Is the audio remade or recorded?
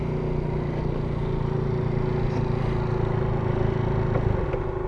recorded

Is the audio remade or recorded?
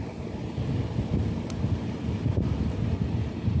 recorded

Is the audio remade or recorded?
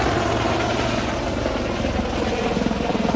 remade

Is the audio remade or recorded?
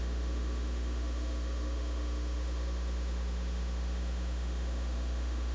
remade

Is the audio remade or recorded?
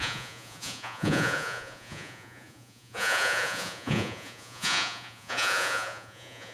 remade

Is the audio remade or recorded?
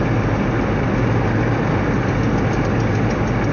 recorded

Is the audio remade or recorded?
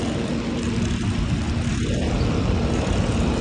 recorded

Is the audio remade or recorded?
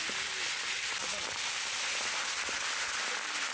recorded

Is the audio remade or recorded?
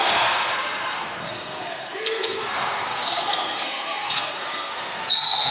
remade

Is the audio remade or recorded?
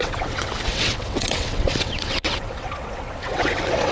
remade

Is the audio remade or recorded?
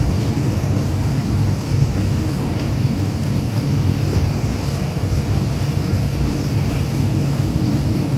remade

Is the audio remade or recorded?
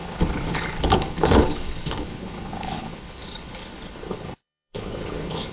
remade